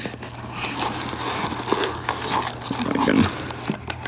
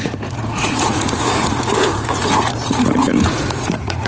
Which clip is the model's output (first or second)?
second